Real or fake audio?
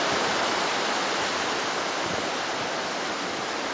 real